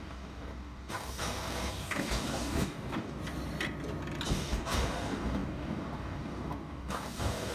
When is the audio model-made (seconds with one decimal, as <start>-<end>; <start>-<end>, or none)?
0.0-3.2; 4.3-7.5